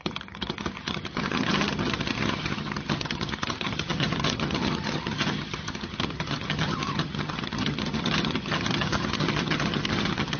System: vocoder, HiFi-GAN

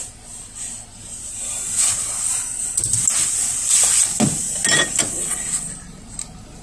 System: none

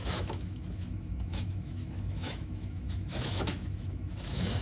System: autoencoder, DAC-VAE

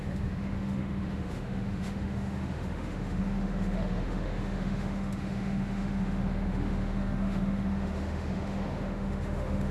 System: autoencoder, DAC-VAE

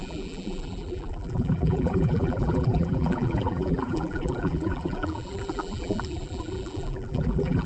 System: vocoder, BigVGAN v2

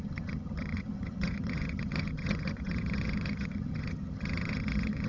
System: vocoder, HiFi-GAN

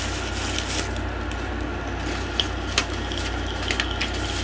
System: none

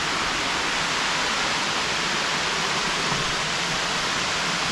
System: none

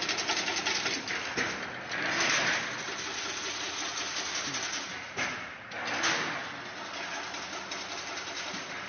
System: none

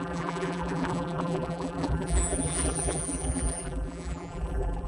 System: vocoder, BigVGAN v2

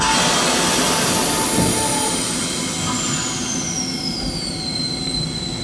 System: none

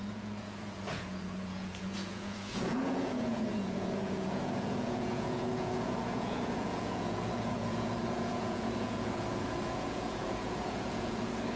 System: vocoder, Vocos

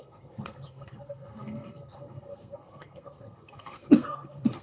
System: codec, SNAC